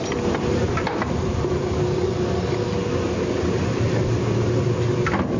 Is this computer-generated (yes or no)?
no